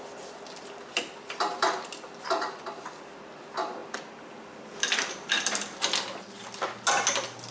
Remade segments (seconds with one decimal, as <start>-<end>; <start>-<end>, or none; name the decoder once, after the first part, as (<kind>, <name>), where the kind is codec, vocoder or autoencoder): none